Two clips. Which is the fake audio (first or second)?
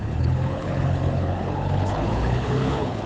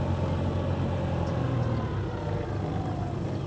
first